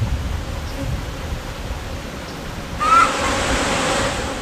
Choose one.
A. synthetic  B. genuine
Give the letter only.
B